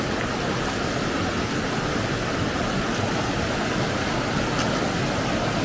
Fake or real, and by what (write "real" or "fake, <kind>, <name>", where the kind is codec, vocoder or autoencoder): real